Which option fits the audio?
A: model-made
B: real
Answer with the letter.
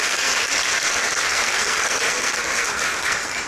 A